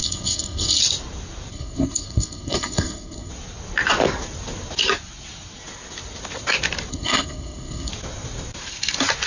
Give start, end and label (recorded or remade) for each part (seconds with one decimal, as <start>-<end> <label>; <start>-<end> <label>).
0.0-0.8 remade; 0.8-1.5 recorded; 1.5-3.3 remade; 3.3-6.9 recorded; 6.9-7.9 remade; 7.9-9.3 recorded